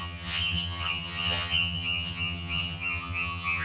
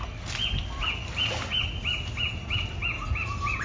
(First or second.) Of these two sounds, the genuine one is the second